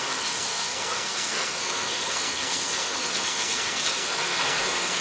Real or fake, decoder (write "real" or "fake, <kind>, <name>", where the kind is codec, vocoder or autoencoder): fake, codec, SNAC